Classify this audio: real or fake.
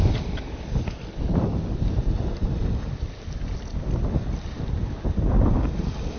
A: real